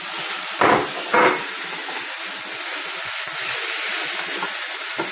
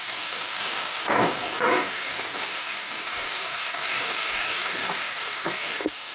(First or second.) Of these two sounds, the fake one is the second